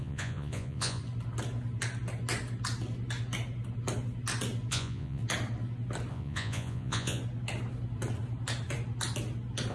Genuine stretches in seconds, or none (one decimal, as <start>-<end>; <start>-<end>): 1.0-4.7; 5.2-6.1; 7.2-9.7